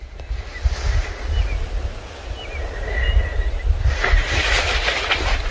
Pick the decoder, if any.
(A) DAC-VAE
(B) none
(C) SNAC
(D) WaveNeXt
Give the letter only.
B